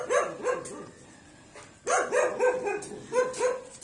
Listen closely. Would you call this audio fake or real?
real